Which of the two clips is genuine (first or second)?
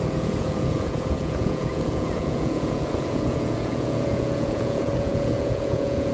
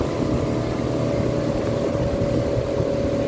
second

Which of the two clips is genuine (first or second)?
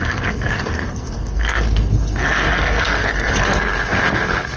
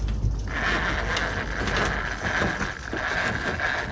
second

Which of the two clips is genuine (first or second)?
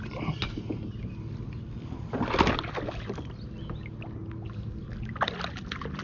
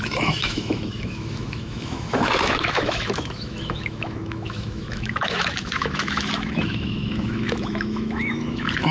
first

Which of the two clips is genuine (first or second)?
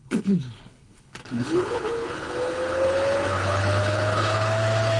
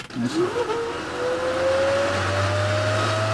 second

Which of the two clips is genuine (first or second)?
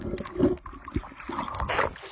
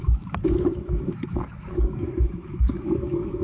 first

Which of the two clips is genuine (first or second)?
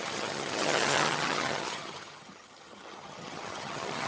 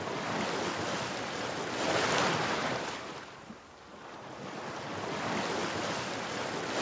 second